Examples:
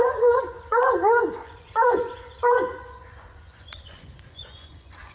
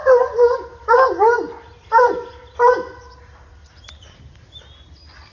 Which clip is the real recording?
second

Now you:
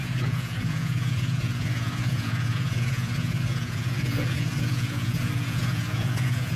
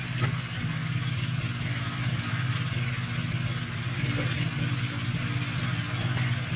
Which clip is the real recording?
second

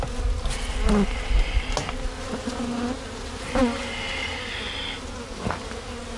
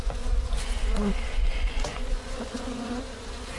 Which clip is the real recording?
first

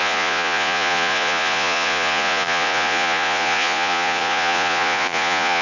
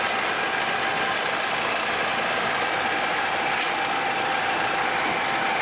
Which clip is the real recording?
second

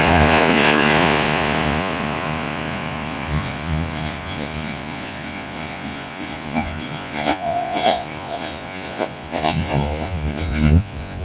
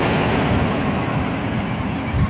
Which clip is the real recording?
second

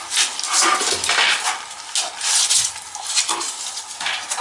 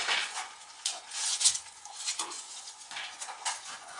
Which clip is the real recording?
first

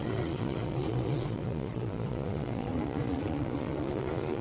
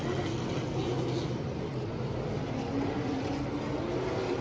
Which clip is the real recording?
second